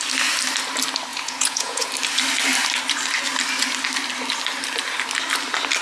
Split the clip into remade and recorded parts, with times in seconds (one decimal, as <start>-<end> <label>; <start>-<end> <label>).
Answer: 0.0-1.1 recorded; 1.1-1.9 remade; 1.9-5.8 recorded